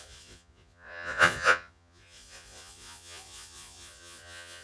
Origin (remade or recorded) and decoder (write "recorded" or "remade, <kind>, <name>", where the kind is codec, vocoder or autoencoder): remade, vocoder, Vocos